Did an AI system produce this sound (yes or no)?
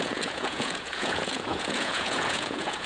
yes